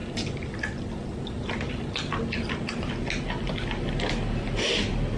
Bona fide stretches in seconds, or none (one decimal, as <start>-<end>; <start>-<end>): 0.0-5.2